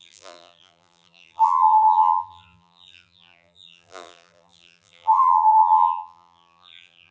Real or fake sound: fake